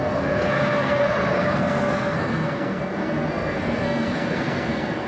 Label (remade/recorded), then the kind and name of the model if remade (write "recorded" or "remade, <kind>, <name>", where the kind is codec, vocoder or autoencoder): remade, codec, SNAC